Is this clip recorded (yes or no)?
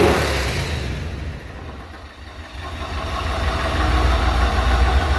yes